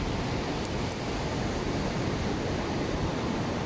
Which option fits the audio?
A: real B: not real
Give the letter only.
A